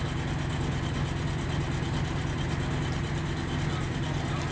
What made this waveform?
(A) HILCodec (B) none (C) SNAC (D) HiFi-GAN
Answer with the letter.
B